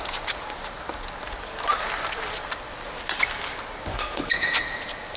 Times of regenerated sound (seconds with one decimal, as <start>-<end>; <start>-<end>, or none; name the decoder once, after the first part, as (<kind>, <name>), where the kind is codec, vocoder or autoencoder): 3.9-4.6 (autoencoder, DAC-VAE)